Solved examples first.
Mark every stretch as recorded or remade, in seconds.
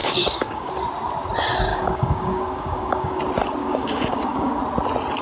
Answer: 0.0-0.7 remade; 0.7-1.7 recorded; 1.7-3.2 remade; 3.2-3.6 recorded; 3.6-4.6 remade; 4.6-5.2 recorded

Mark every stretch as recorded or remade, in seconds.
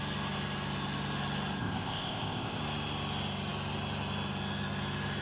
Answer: 0.0-1.6 recorded; 1.6-2.6 remade; 2.6-5.2 recorded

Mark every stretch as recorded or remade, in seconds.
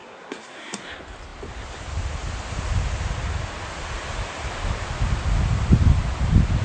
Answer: 0.0-0.9 remade; 0.9-6.6 recorded